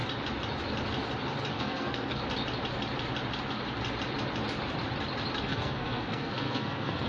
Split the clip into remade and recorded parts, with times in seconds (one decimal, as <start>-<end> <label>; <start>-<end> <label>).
0.0-1.5 recorded; 1.5-2.2 remade; 2.2-5.4 recorded; 5.4-7.1 remade